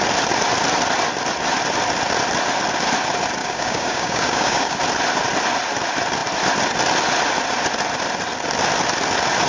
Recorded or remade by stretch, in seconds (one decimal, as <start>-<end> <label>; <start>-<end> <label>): 0.0-3.4 recorded; 3.4-4.8 remade; 4.8-9.5 recorded